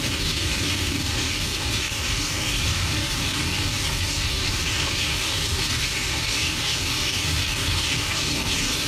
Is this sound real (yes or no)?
no